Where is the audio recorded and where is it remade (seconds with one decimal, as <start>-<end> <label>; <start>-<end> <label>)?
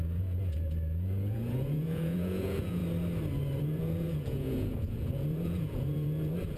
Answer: 0.0-2.8 remade; 2.8-3.6 recorded; 3.6-6.6 remade